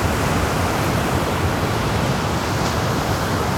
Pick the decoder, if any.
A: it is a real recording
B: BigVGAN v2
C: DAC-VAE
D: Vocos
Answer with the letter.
A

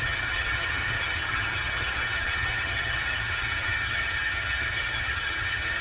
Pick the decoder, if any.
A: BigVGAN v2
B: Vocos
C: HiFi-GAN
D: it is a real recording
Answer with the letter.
C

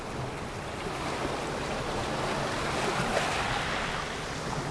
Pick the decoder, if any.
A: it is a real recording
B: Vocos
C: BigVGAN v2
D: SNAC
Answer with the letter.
A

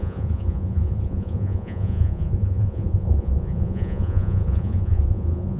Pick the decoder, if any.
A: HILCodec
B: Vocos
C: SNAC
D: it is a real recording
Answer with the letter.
B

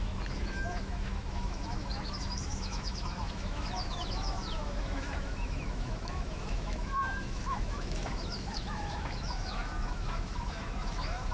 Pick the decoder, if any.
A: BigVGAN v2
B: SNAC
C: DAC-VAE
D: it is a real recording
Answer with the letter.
C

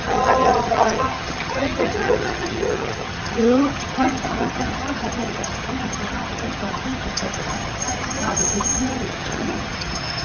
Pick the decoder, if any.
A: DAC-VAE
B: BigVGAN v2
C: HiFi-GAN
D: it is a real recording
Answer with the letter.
C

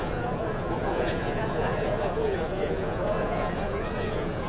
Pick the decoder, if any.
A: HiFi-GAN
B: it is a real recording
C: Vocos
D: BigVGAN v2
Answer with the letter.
C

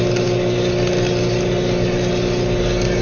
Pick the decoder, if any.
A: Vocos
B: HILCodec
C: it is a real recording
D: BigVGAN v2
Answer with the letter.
C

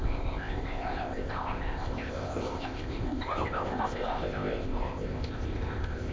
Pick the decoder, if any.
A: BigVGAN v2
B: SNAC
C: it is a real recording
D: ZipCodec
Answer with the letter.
D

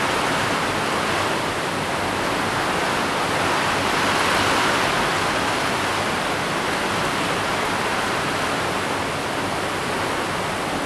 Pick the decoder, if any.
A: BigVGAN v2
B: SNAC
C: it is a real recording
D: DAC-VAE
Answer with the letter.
C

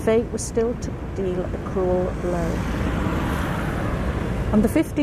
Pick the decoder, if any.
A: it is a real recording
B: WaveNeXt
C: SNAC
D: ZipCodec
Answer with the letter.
A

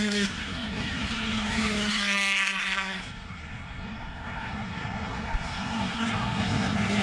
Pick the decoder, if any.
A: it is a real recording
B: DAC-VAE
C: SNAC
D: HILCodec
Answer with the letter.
C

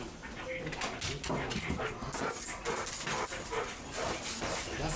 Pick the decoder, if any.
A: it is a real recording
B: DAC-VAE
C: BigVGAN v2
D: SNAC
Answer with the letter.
A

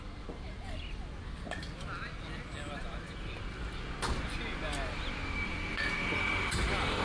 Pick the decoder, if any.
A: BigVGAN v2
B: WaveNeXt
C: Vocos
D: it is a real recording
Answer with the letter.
D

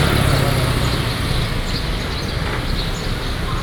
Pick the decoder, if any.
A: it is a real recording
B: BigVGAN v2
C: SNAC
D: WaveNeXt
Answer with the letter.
A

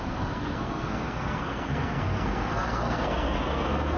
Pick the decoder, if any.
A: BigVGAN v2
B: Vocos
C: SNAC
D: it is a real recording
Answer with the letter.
C